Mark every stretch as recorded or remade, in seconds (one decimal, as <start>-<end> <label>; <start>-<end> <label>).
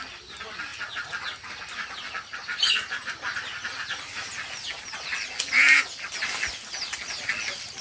0.0-7.8 recorded